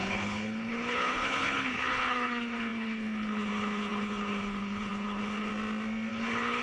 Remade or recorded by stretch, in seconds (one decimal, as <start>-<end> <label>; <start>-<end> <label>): 0.0-5.5 remade; 5.5-6.1 recorded; 6.1-6.6 remade